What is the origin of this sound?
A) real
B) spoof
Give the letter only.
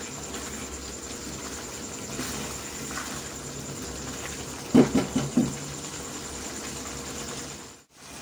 A